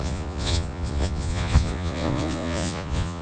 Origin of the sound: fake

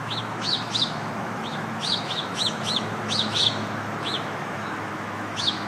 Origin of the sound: fake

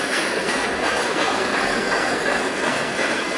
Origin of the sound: fake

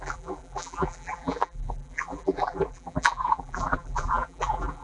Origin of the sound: fake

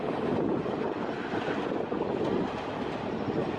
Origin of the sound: real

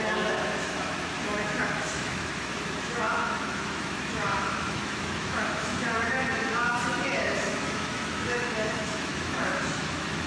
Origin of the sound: fake